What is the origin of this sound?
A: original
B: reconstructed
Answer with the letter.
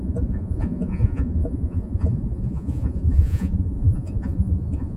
B